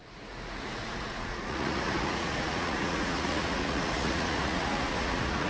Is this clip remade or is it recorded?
remade